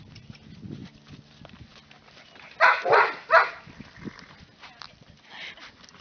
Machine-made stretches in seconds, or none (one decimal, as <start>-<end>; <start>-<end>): none